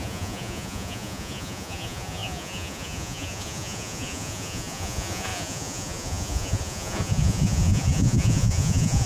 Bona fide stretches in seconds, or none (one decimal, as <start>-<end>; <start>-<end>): none